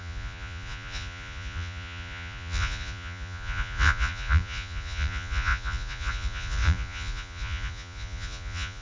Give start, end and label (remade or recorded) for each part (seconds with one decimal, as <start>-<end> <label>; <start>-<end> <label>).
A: 0.0-8.8 remade